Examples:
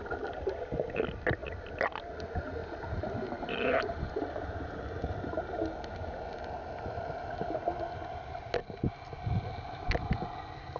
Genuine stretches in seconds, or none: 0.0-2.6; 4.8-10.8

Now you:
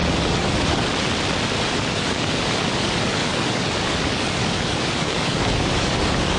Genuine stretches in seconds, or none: 0.9-1.8

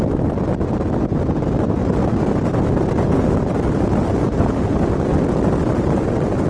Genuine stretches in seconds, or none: 0.0-6.5

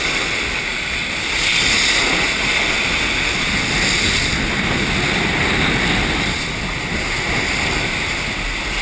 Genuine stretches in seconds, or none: 0.0-8.8

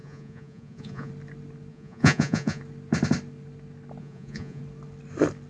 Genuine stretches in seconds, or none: 1.1-1.7; 2.6-4.0; 4.6-5.5